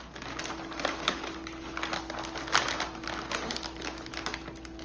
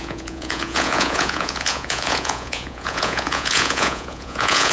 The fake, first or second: second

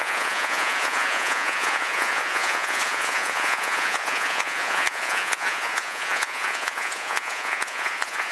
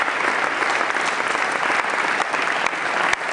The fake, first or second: first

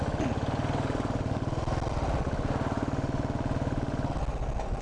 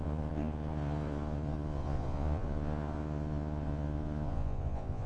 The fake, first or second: second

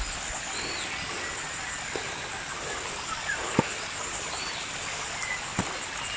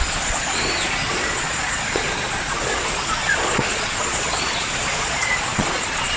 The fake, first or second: second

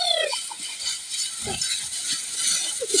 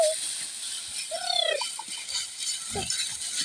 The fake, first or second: first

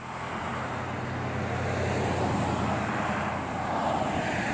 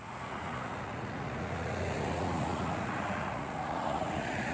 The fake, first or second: second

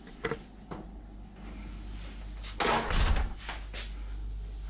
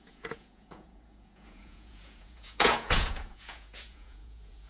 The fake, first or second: second